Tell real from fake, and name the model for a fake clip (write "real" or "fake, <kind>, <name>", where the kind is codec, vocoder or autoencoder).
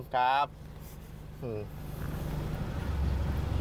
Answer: real